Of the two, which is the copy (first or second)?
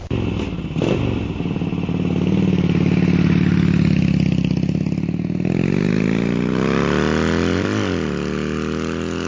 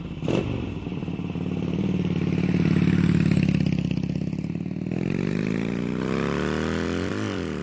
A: second